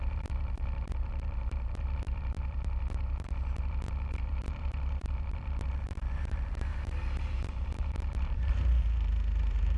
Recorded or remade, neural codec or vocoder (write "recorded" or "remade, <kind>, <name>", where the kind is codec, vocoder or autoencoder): remade, vocoder, BigVGAN v2